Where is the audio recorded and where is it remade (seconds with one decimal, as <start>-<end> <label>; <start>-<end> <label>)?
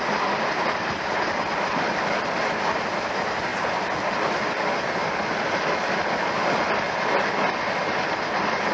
0.0-8.7 recorded